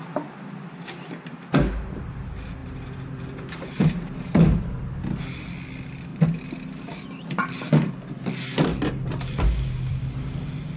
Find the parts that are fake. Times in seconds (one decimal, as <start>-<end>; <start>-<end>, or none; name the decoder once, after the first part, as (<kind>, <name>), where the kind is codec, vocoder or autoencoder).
2.6-5.0 (vocoder, BigVGAN v2); 6.1-7.3; 8.7-10.0